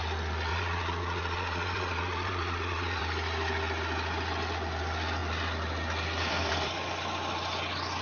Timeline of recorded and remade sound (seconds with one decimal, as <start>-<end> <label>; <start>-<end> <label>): 0.0-0.5 recorded; 0.5-3.0 remade; 3.0-8.0 recorded